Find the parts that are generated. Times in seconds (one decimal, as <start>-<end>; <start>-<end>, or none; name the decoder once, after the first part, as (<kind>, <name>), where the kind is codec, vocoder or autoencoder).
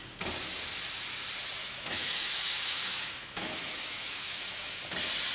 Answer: 1.6-4.8 (autoencoder, DAC-VAE)